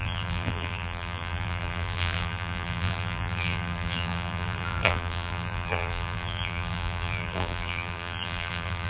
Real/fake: fake